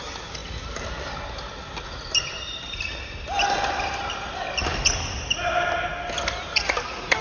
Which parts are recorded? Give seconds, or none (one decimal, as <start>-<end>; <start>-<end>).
0.0-7.2